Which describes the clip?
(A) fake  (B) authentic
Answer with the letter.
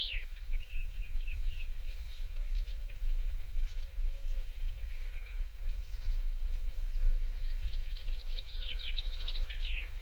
A